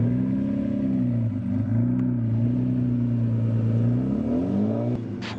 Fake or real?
real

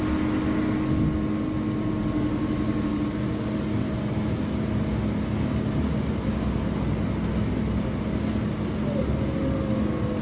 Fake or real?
real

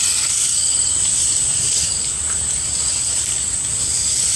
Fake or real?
real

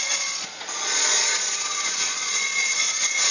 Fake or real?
fake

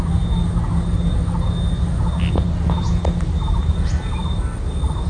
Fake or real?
real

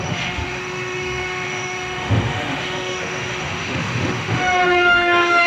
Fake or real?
fake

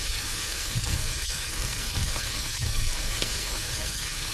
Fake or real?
fake